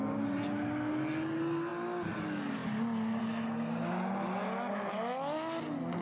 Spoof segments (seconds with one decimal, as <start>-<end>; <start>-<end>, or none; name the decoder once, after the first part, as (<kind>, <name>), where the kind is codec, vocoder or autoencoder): none